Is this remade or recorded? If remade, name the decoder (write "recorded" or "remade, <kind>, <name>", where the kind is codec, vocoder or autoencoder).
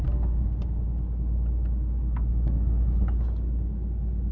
recorded